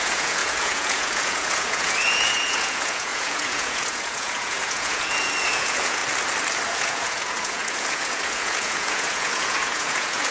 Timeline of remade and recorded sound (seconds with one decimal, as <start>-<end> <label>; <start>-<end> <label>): 0.0-6.0 remade; 6.0-6.7 recorded; 6.7-10.3 remade